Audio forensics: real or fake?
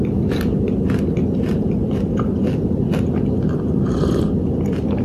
real